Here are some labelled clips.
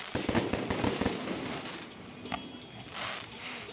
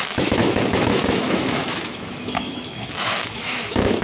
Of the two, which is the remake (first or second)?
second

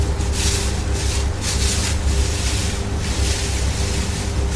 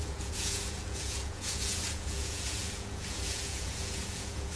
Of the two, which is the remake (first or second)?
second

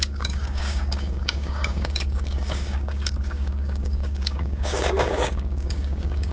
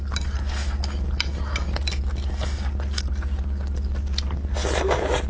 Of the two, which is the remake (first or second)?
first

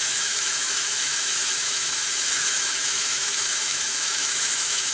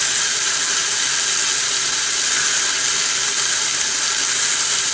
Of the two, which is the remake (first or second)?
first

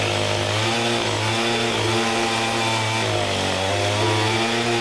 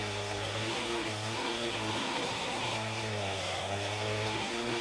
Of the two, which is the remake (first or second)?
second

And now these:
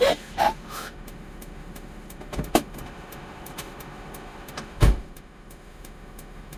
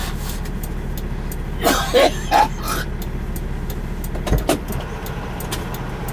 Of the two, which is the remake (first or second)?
first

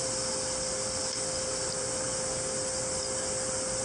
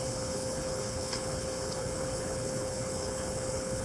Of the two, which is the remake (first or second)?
second